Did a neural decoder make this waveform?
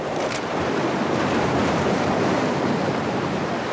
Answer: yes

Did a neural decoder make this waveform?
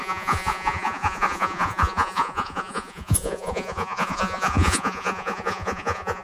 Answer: yes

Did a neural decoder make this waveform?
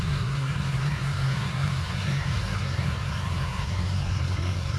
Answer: yes